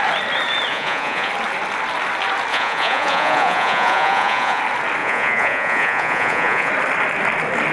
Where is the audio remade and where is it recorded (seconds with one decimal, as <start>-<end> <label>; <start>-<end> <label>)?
0.0-0.7 recorded; 0.7-1.3 remade; 1.3-2.5 recorded; 2.5-4.6 remade; 4.6-5.0 recorded; 5.0-6.7 remade; 6.7-7.7 recorded